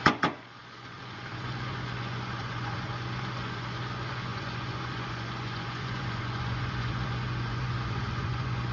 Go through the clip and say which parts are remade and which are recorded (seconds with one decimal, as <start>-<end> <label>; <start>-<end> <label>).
0.0-8.7 remade